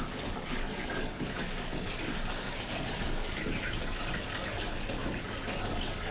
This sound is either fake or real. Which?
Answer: fake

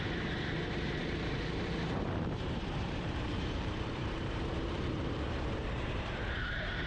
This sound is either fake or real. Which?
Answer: fake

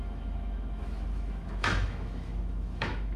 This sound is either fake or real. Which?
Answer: fake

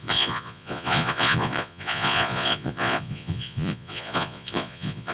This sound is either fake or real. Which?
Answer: fake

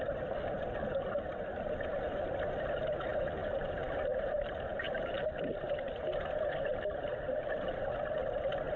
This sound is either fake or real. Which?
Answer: real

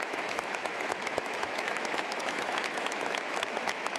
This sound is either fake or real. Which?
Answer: fake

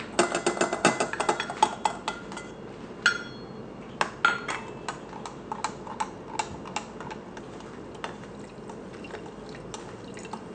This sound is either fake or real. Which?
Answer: real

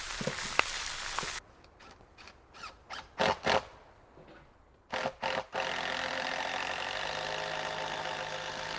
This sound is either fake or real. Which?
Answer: real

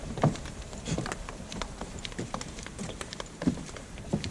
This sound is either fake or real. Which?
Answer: fake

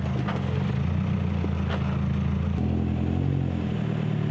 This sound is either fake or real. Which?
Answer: real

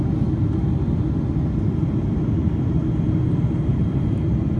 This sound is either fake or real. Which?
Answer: real